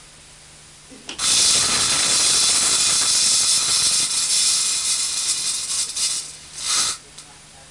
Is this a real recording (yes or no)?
yes